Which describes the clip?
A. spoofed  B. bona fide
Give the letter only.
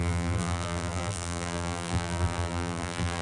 A